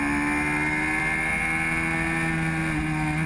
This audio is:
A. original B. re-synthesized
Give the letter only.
A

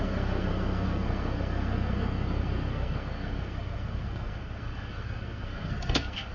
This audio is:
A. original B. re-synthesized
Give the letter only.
B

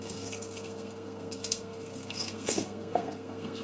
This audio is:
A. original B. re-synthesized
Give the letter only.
B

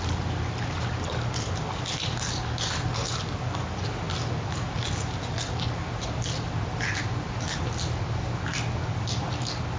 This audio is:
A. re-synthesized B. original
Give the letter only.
B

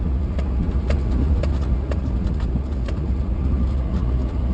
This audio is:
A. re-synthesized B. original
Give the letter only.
A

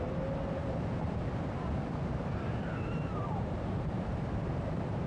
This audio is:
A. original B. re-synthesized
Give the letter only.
B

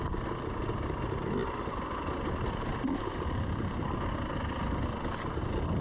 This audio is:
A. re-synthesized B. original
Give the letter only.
B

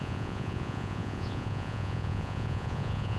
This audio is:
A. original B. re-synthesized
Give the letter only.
B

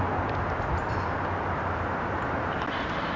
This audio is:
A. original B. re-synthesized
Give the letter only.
A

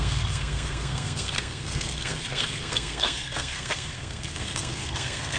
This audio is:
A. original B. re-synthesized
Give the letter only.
B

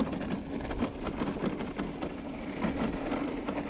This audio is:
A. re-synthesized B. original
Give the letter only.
B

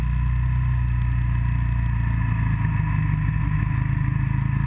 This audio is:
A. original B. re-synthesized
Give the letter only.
A